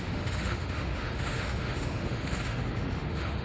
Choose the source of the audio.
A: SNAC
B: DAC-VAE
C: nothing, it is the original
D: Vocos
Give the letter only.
B